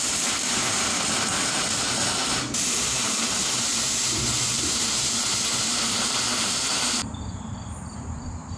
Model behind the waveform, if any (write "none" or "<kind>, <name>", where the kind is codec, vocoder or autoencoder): vocoder, BigVGAN v2